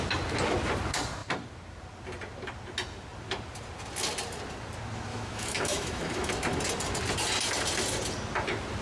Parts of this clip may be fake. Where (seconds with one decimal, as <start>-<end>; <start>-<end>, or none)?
5.1-6.3